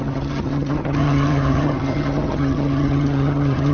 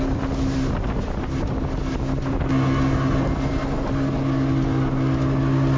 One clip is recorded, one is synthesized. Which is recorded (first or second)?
second